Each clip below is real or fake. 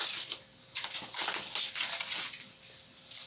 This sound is real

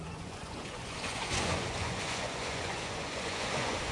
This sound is fake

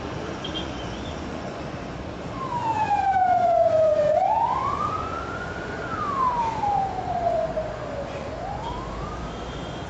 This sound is fake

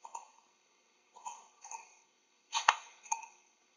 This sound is fake